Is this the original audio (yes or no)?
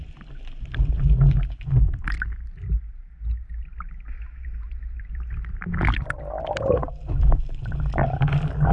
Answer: yes